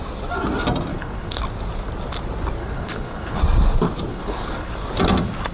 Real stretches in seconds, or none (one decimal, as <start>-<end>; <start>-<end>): 0.0-0.9; 1.4-2.6; 3.4-4.1; 4.7-5.5